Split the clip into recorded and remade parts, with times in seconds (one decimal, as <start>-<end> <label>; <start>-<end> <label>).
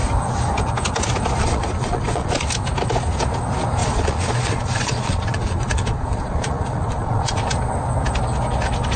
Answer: 0.0-1.4 recorded; 1.4-2.3 remade; 2.3-3.8 recorded; 3.8-7.4 remade; 7.4-9.0 recorded